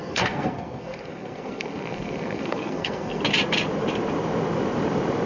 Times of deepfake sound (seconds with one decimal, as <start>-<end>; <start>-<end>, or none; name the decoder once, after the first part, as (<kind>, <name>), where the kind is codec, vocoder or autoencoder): 0.0-3.2 (codec, SNAC)